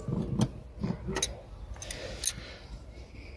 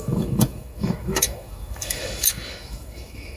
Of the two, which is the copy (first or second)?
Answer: second